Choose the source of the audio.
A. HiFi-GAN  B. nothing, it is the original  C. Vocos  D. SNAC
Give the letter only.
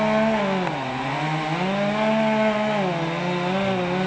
B